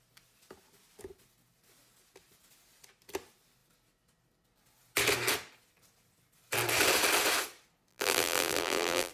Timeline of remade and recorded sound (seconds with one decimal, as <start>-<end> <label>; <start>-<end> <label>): 0.0-7.9 recorded; 7.9-9.1 remade